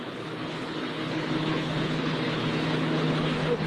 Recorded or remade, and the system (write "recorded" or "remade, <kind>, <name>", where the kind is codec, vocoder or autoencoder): remade, codec, HILCodec